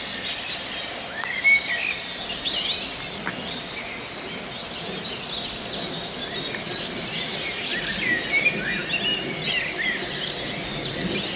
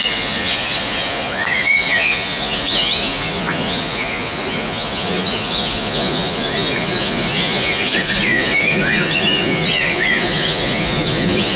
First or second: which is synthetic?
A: second